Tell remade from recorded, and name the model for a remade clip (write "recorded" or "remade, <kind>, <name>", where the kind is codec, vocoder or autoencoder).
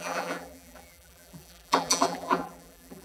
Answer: remade, vocoder, BigVGAN v2